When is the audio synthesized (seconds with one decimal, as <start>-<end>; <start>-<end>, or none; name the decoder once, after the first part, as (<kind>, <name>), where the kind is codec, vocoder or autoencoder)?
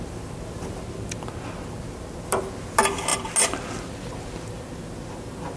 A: none